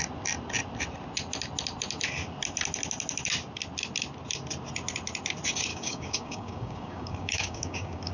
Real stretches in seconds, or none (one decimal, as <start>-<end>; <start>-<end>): 0.0-5.7